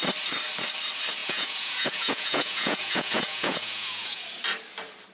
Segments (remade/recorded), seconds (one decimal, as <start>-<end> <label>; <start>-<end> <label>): 0.0-1.2 recorded; 1.2-4.2 remade; 4.2-5.1 recorded

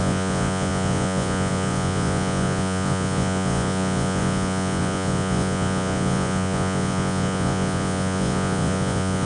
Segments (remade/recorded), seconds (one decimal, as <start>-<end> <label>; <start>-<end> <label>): 0.0-9.3 remade

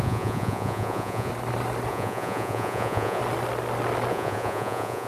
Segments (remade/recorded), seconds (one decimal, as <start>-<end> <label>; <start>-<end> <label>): 0.0-1.3 remade; 1.3-1.9 recorded; 1.9-3.2 remade; 3.2-4.1 recorded; 4.1-5.1 remade

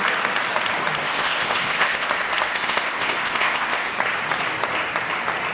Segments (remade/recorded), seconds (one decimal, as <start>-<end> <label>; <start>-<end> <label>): 0.0-1.0 recorded; 1.0-2.1 remade; 2.1-2.5 recorded; 2.5-3.9 remade; 3.9-5.5 recorded

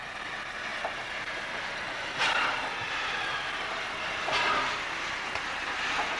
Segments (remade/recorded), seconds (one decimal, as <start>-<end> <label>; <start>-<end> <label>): 0.0-6.2 recorded